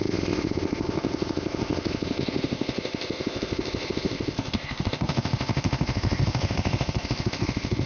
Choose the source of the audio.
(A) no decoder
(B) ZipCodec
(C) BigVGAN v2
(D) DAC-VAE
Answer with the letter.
B